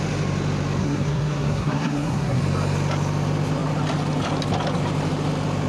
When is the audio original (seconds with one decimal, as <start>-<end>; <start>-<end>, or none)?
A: 0.0-0.8; 2.4-5.7

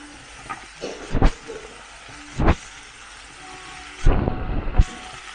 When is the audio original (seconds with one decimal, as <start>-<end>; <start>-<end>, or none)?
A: 0.0-5.3

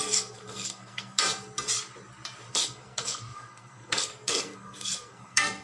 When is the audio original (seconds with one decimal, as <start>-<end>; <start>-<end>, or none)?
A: 1.2-2.5